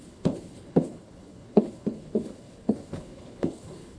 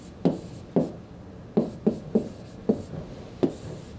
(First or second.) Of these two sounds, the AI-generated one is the first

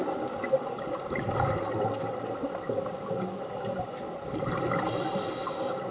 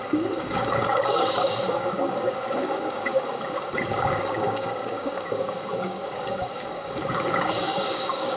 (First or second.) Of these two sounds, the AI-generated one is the second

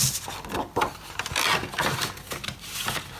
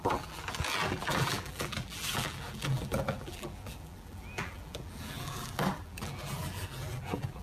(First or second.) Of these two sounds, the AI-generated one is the second